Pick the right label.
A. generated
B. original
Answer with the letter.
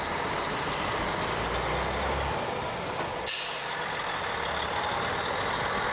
B